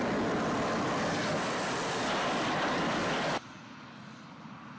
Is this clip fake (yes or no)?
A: no